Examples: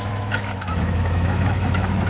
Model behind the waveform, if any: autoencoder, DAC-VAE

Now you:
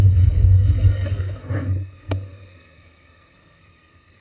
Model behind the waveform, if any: codec, SNAC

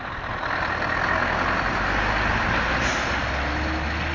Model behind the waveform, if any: none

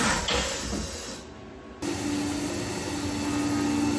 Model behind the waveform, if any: none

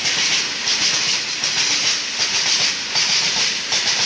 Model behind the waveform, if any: none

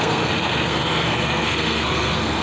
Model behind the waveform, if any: codec, SNAC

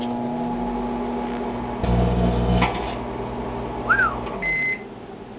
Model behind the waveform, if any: none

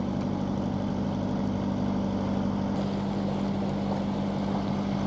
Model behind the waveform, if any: none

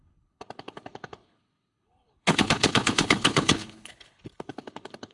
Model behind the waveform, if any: codec, HILCodec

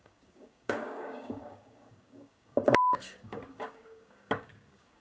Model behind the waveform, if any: codec, DAC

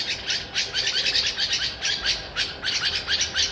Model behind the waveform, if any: none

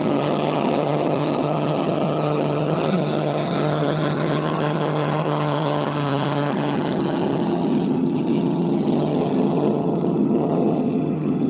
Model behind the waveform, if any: vocoder, HiFi-GAN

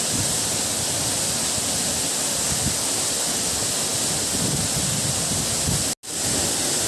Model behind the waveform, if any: none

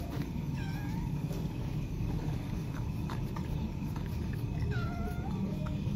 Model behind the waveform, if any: codec, DAC